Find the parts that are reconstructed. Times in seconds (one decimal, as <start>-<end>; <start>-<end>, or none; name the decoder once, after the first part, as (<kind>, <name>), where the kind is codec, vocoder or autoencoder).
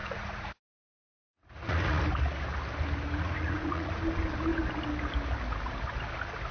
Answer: 0.0-2.0 (vocoder, Vocos); 3.2-3.9